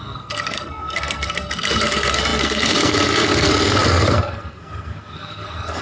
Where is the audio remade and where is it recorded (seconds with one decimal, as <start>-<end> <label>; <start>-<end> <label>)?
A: 0.0-5.8 remade